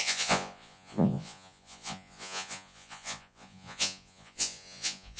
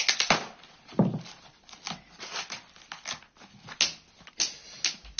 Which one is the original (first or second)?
second